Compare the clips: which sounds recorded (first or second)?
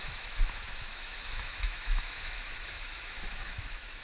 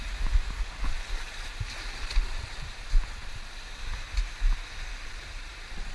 second